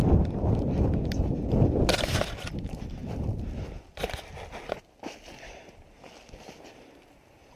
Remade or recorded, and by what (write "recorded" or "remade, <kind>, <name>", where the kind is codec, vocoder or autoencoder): recorded